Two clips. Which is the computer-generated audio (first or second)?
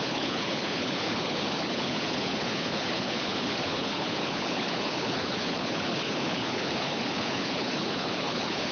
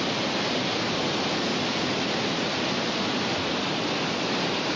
first